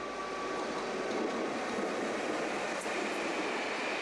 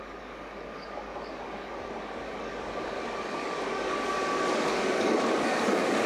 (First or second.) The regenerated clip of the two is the second